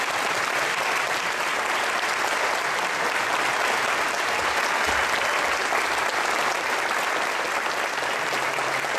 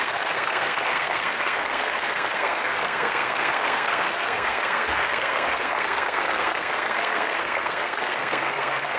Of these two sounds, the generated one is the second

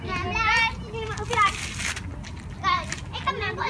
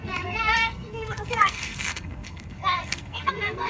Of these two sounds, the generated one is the second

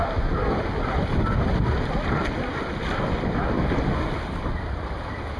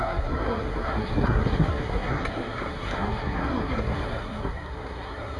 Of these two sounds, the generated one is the second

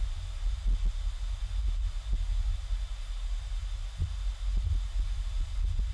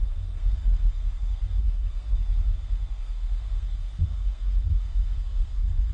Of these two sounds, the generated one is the second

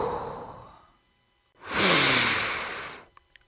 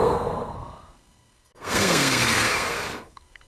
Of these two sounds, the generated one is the second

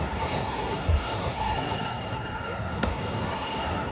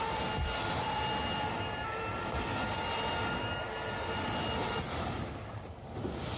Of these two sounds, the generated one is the first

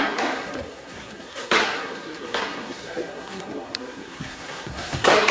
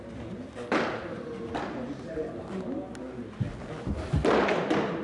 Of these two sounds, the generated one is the first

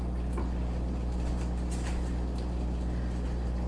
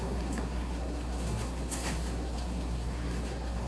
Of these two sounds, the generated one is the second